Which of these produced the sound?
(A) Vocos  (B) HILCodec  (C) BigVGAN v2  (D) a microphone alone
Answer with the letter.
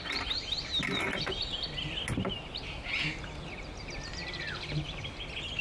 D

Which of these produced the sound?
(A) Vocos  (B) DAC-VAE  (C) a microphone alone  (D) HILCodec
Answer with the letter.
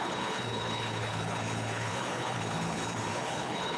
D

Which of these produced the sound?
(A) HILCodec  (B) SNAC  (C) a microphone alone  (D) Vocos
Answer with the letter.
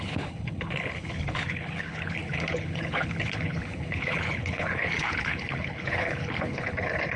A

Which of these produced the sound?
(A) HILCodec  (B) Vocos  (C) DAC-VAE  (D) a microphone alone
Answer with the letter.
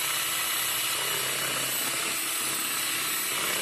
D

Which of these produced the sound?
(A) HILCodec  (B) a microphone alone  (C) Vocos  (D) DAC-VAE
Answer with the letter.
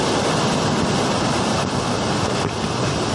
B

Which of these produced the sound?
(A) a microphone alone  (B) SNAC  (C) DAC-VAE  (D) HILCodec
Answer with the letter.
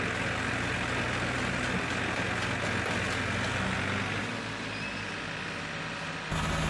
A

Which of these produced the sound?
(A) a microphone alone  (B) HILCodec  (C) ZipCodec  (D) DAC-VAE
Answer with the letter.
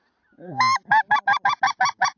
A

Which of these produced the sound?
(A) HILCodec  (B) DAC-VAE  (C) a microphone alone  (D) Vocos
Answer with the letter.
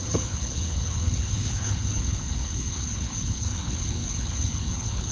A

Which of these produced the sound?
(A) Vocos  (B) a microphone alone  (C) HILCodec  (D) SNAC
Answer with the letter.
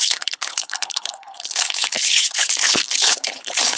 C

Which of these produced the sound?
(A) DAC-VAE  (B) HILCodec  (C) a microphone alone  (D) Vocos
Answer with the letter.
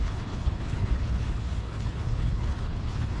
B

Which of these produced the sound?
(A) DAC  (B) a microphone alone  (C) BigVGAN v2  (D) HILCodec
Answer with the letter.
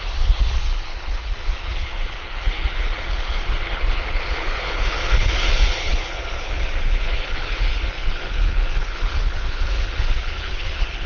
D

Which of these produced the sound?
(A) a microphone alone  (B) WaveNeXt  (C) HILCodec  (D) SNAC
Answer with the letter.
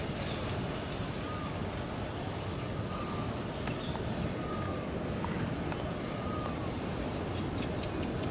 A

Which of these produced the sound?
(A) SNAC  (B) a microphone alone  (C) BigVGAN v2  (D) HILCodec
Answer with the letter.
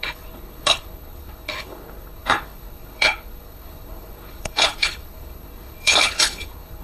D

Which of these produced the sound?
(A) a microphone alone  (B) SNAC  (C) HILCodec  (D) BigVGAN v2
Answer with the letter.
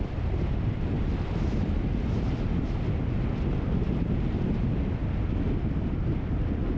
A